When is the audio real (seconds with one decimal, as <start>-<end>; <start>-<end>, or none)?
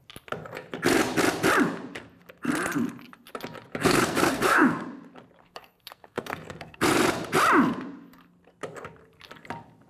0.0-3.8; 4.9-5.4; 6.9-9.9